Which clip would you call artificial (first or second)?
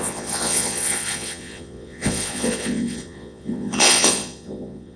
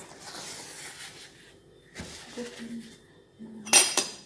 first